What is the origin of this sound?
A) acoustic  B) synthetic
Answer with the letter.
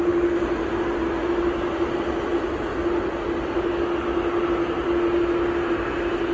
A